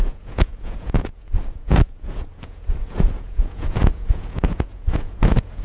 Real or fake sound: fake